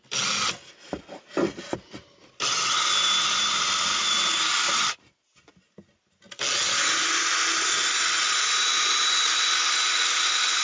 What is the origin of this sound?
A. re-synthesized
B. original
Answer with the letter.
B